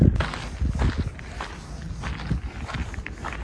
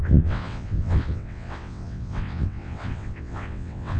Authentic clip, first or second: first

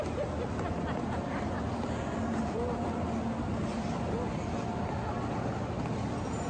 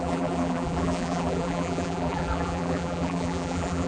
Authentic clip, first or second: first